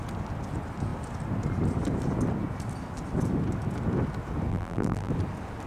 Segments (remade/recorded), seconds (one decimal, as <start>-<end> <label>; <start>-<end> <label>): 0.0-4.5 recorded; 4.5-5.1 remade; 5.1-5.7 recorded